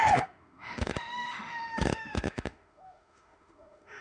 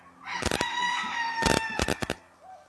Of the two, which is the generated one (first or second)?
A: first